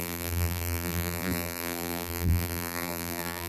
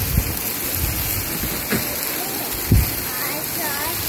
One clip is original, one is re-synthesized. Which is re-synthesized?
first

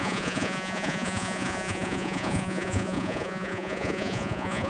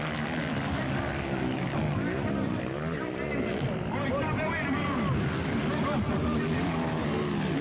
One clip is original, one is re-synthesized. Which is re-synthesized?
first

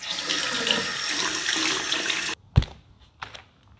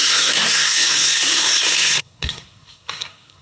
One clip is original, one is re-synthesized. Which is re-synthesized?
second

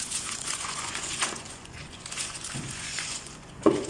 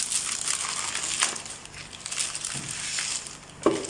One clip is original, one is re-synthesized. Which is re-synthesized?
first